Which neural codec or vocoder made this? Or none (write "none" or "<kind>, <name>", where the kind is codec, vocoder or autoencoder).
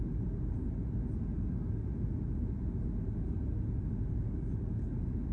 none